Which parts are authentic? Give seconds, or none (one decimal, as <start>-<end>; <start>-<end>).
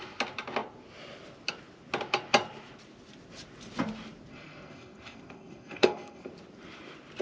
0.0-4.3; 6.3-7.2